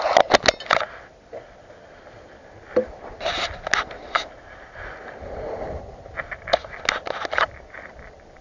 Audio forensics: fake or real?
real